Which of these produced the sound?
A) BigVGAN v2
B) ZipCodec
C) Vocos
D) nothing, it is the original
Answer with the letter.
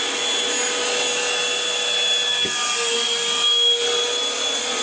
D